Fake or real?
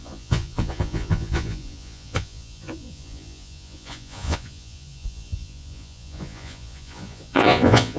fake